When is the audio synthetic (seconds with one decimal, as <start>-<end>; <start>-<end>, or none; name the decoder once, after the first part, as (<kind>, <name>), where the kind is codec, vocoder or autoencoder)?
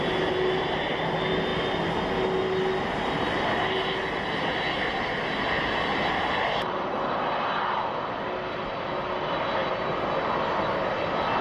5.9-7.0 (vocoder, BigVGAN v2)